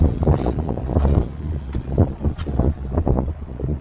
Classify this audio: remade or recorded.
remade